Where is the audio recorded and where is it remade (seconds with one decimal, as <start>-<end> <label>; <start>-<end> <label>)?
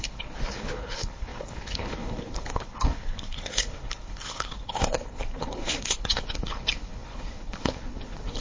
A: 0.0-8.4 remade